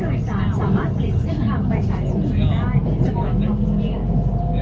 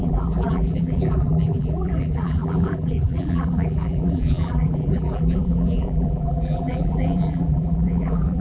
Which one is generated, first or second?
second